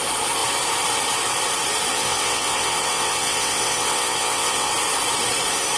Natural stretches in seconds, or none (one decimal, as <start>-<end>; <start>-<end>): 0.0-1.9; 4.7-5.8

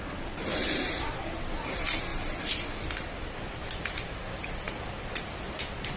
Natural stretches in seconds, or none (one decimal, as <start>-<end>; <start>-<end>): 0.6-1.2; 2.1-5.2

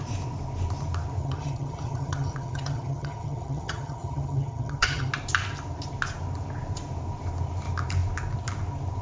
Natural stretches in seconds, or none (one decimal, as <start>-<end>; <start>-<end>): 0.0-1.2; 5.1-9.0

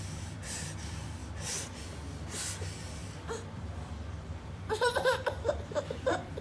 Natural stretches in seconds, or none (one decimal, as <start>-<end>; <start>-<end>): 1.2-2.6